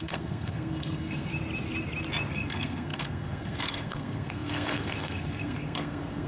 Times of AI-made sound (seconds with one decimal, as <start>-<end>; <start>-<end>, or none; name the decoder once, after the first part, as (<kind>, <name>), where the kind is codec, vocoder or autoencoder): 0.0-1.3 (codec, SNAC); 2.3-6.3